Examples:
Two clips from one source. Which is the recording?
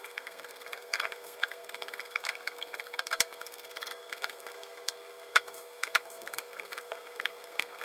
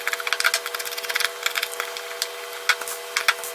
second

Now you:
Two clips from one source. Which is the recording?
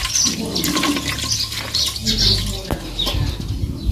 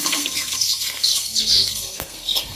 first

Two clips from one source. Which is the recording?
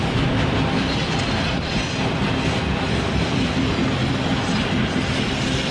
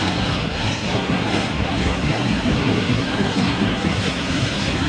first